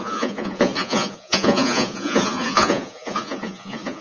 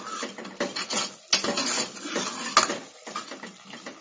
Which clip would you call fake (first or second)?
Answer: first